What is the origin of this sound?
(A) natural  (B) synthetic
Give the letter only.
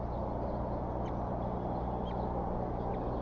A